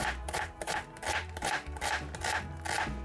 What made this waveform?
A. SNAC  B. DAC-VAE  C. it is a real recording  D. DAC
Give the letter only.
C